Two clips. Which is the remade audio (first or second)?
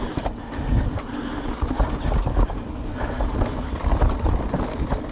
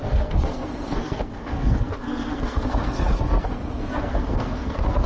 second